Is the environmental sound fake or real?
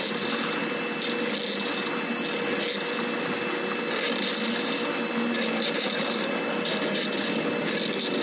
real